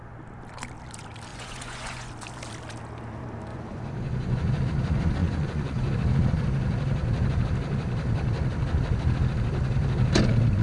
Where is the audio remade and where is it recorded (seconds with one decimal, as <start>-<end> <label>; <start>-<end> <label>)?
0.0-1.3 recorded; 1.3-2.1 remade; 2.1-3.5 recorded; 3.5-4.6 remade; 4.6-5.2 recorded; 5.2-5.9 remade; 5.9-10.6 recorded